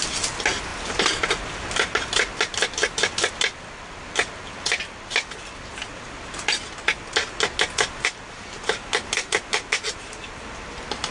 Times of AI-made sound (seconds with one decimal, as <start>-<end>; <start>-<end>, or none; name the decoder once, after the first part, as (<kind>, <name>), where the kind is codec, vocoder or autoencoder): none